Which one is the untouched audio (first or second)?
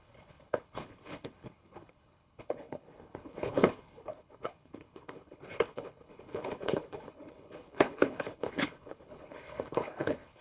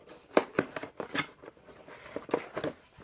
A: second